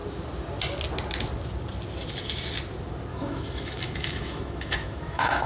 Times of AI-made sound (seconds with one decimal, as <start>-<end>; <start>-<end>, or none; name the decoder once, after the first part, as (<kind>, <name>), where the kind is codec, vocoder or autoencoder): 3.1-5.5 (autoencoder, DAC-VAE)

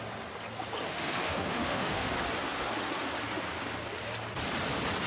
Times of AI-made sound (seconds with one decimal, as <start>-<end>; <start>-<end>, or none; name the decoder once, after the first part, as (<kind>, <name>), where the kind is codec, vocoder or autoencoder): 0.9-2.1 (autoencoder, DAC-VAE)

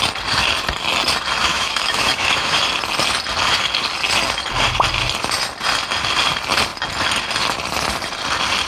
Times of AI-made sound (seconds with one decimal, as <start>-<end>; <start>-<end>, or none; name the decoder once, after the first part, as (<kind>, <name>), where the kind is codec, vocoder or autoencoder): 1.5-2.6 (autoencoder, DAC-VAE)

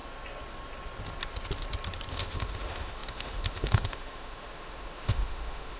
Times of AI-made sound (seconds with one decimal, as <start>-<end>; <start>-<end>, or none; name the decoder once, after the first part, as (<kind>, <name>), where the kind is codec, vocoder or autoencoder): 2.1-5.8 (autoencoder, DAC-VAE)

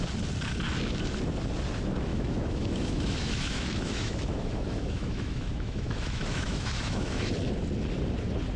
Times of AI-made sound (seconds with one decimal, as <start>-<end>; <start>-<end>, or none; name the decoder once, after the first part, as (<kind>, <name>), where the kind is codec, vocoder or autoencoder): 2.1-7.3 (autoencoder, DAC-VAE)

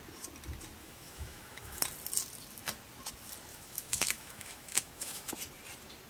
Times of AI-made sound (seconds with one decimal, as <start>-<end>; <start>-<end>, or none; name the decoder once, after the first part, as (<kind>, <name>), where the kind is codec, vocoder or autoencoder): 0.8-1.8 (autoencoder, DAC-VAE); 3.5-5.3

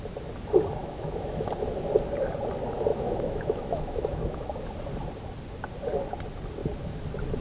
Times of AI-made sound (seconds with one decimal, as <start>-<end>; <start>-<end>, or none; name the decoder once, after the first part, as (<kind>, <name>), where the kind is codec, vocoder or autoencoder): 0.8-1.5 (autoencoder, DAC-VAE); 2.9-4.6